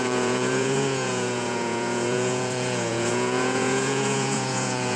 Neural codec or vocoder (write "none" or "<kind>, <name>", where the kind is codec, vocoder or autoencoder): vocoder, Vocos